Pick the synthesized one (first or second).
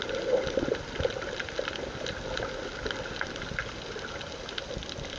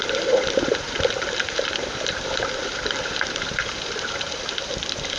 second